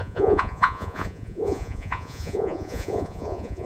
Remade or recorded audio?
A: remade